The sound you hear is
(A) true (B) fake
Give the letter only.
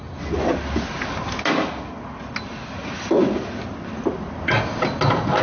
A